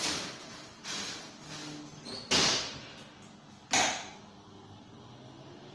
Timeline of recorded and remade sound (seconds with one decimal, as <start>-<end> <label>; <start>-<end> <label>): 0.0-5.7 recorded